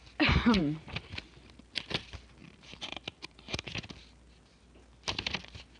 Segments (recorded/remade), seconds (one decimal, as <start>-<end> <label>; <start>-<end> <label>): 0.0-2.4 recorded; 2.4-3.7 remade; 3.7-5.8 recorded